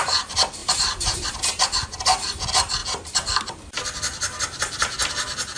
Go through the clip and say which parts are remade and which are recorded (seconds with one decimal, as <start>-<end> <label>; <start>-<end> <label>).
0.0-0.6 recorded; 0.6-1.4 remade; 1.4-5.6 recorded